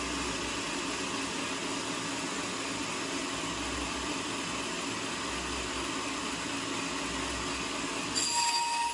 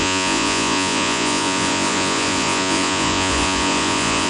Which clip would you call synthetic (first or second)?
second